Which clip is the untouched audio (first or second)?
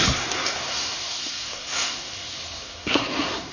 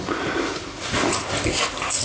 second